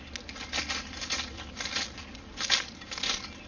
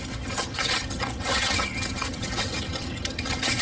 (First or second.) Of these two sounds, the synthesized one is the second